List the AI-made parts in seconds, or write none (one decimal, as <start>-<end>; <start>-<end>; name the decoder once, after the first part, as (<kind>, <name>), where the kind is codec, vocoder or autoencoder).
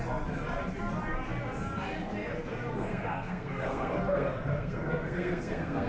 2.5-5.9 (codec, SNAC)